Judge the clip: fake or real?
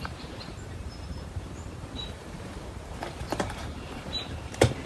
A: fake